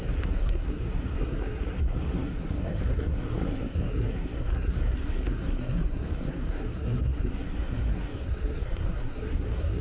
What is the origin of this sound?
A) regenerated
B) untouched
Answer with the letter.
A